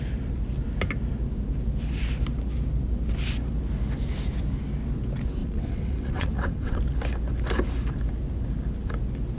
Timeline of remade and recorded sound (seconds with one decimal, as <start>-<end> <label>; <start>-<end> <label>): 0.0-5.4 recorded; 5.4-6.8 remade; 6.8-9.4 recorded